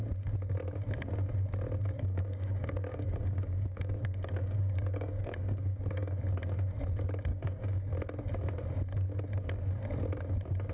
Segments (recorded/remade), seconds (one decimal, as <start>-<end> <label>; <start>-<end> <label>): 0.0-1.8 recorded; 1.8-6.2 remade; 6.2-7.3 recorded; 7.3-7.9 remade; 7.9-10.7 recorded